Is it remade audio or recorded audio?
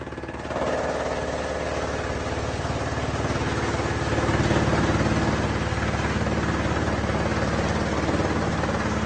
recorded